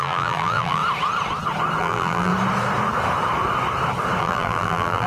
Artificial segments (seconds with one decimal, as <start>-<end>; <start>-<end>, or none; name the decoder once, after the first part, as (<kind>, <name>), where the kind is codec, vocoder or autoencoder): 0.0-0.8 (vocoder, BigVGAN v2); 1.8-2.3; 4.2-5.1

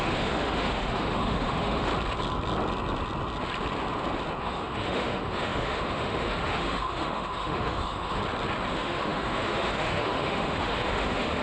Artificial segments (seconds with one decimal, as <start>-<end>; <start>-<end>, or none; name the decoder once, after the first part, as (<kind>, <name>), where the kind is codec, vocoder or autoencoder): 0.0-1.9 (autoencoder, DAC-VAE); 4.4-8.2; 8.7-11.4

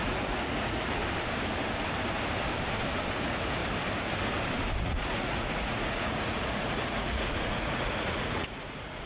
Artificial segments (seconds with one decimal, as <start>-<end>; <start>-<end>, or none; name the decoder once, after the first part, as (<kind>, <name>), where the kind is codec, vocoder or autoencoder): 0.0-1.0 (vocoder, Vocos); 3.1-3.6; 4.8-9.1

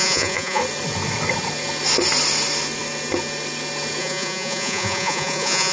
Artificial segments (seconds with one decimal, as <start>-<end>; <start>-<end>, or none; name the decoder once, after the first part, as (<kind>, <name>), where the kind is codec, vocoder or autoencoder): 0.0-0.6 (vocoder, Vocos); 4.0-5.7

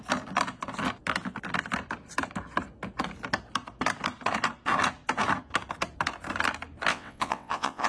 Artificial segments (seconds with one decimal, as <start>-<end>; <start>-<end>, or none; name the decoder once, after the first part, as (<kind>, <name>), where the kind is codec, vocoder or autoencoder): 6.9-7.9 (vocoder, WaveNeXt)

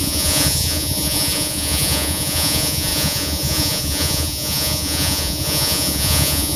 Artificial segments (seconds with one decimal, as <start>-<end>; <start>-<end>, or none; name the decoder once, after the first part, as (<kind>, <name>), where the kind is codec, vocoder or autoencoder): 0.0-6.6 (vocoder, Vocos)

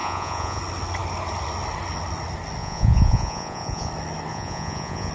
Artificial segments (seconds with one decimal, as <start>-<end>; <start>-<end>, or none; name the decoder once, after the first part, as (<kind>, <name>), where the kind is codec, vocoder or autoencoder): 0.0-0.6 (vocoder, Vocos); 2.6-3.9; 4.3-5.1